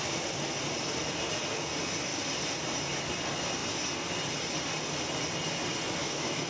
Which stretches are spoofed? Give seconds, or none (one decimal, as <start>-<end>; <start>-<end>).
6.0-6.5